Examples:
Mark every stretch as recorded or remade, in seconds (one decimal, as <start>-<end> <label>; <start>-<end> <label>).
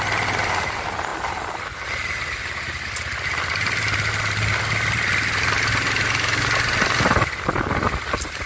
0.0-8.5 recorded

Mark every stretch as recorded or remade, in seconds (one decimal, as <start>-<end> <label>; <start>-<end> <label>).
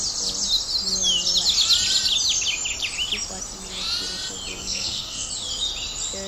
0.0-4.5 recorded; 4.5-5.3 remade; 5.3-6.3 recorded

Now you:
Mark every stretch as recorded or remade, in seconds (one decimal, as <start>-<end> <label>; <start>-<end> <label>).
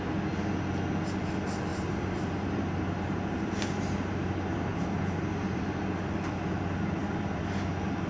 0.0-1.7 recorded; 1.7-5.6 remade; 5.6-8.1 recorded